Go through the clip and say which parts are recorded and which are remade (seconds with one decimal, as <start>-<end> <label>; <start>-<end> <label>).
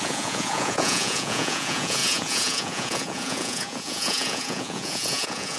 0.0-5.6 remade